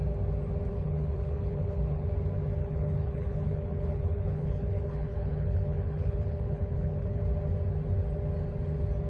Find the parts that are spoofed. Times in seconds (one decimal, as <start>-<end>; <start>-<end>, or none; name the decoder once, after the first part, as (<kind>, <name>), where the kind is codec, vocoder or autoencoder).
0.7-2.1 (codec, HILCodec); 2.6-7.2

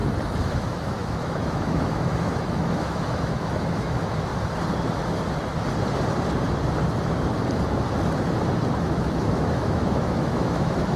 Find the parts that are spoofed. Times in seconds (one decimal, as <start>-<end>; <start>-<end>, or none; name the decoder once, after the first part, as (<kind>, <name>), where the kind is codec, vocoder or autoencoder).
0.5-4.3 (autoencoder, DAC-VAE); 8.8-11.0

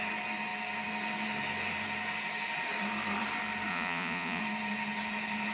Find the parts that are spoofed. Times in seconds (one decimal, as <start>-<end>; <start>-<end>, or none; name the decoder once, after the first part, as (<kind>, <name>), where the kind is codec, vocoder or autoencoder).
3.7-4.4 (vocoder, Vocos)